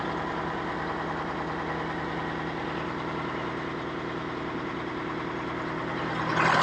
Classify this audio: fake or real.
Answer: real